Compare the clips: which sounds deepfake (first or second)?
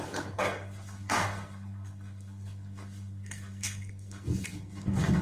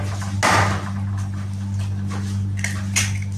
first